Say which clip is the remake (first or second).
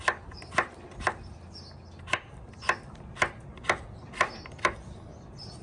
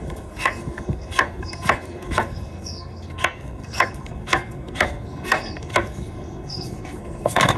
second